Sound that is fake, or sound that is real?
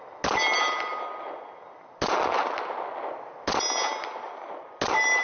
real